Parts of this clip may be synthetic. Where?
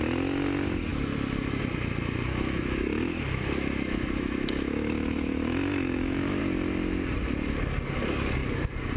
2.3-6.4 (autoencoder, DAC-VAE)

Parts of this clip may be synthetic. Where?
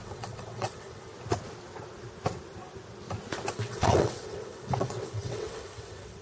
0.0-1.1 (vocoder, WaveNeXt); 3.5-6.2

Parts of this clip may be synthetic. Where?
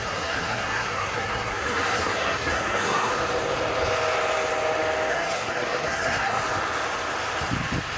0.0-3.1 (codec, SNAC); 5.1-6.4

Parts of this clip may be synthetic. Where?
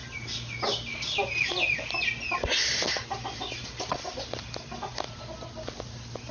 none